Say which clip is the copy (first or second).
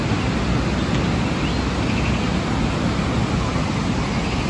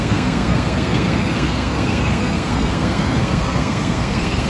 second